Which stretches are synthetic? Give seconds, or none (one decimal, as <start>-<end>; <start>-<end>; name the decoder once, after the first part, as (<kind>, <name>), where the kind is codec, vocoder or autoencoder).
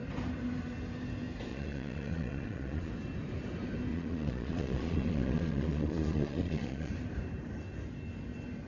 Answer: 1.5-2.9 (vocoder, Vocos); 3.9-6.9